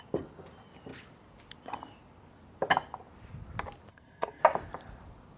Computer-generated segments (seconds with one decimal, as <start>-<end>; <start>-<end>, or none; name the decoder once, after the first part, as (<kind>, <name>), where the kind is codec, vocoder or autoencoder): 3.9-4.4 (codec, SNAC)